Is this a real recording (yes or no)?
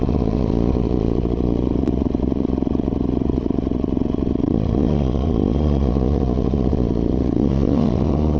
no